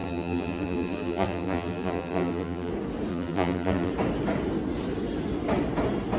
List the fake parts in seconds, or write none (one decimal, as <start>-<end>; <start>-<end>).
0.0-2.7; 3.1-3.9